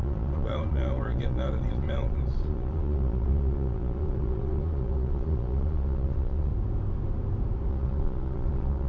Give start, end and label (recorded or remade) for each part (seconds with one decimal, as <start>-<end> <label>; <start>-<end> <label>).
0.0-6.5 remade; 6.5-7.7 recorded; 7.7-8.9 remade